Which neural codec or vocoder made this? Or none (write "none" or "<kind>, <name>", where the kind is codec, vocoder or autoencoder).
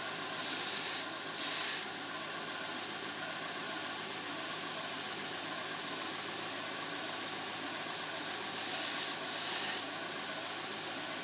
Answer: none